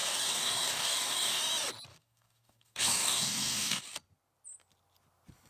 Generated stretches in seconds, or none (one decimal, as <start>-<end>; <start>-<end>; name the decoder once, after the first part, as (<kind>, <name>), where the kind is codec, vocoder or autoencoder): 0.0-1.4 (codec, DAC); 1.9-3.8